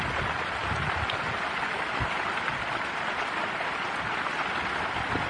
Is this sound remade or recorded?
recorded